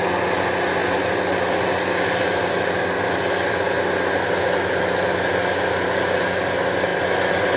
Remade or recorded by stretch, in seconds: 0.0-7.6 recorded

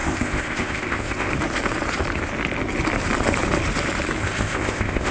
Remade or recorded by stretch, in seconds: 0.0-1.3 remade; 1.3-4.2 recorded; 4.2-5.1 remade